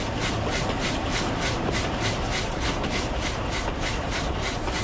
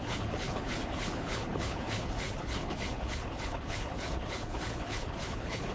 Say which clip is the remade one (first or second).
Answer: second